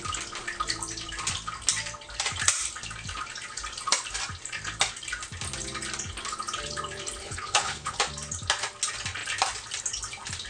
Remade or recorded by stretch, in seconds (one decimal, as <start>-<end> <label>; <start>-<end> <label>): 0.0-7.2 recorded; 7.2-8.0 remade; 8.0-10.5 recorded